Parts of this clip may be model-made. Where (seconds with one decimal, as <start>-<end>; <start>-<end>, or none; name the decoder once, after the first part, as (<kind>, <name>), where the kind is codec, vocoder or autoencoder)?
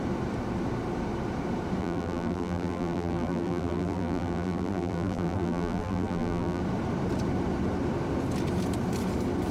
1.8-6.6 (vocoder, BigVGAN v2)